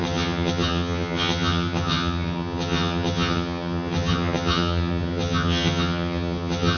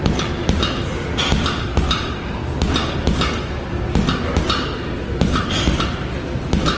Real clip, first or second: second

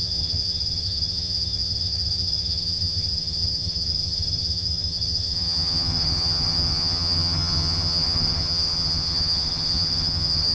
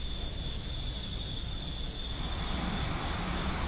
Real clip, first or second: second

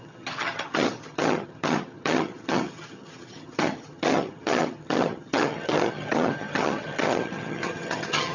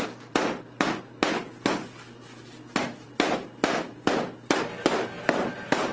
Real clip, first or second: second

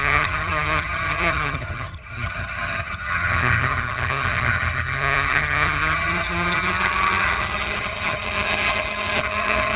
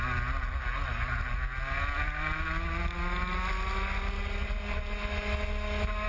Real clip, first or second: second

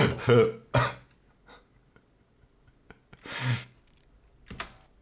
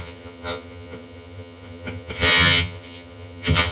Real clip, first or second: first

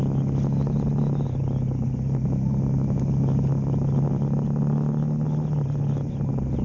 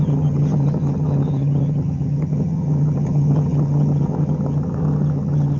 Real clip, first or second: first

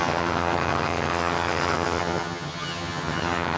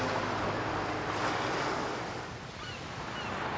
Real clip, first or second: second